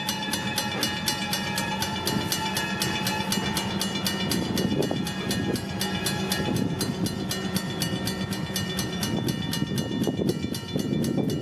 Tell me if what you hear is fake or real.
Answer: real